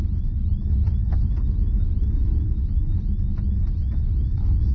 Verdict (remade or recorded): recorded